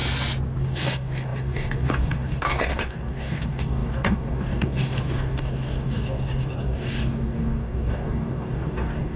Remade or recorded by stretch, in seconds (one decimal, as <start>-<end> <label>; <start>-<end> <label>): 0.0-0.6 recorded; 0.6-9.2 remade